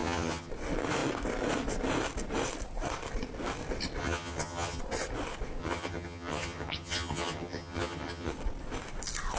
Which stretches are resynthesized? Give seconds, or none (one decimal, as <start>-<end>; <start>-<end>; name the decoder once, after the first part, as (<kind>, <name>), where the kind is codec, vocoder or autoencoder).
0.0-0.5 (vocoder, HiFi-GAN); 4.0-4.8; 5.6-8.3